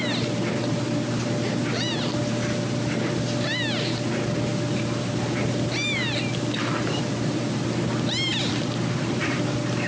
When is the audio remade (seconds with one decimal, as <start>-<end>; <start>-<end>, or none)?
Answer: 8.3-9.4